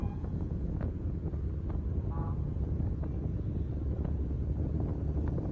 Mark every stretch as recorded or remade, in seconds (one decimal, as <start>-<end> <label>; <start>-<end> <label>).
0.0-1.3 remade; 1.3-5.5 recorded

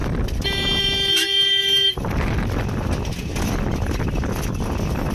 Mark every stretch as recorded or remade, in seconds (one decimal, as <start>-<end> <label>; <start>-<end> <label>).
0.0-5.1 recorded

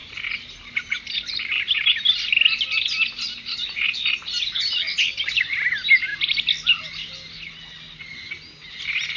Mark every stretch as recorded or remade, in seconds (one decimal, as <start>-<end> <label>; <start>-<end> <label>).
0.0-9.2 recorded

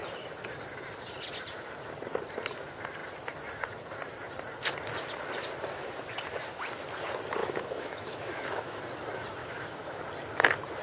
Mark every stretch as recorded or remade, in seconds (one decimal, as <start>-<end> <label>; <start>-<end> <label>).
0.0-7.4 recorded; 7.4-8.8 remade; 8.8-9.4 recorded; 9.4-10.0 remade; 10.0-10.8 recorded

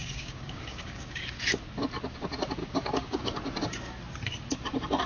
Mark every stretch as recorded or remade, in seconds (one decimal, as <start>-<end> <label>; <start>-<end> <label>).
0.0-1.4 remade; 1.4-2.6 recorded; 2.6-3.2 remade; 3.2-5.1 recorded

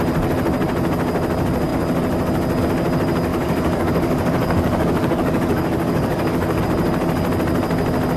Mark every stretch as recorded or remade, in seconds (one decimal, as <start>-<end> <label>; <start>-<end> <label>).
0.0-3.3 recorded; 3.3-6.6 remade; 6.6-8.2 recorded